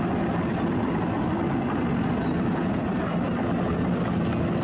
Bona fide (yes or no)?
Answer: yes